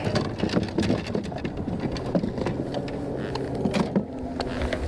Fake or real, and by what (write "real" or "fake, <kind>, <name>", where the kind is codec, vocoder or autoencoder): real